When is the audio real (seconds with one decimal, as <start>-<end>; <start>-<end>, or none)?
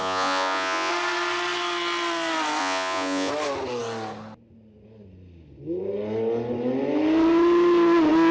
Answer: 0.9-2.6; 3.3-8.3